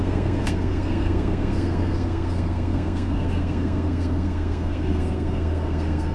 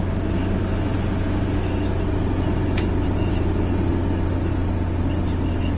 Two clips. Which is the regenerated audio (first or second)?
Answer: first